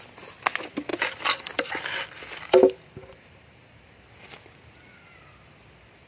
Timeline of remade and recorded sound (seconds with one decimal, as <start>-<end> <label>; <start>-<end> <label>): 0.0-0.9 recorded; 0.9-4.1 remade; 4.1-6.1 recorded